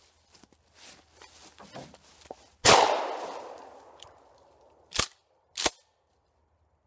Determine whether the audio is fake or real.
real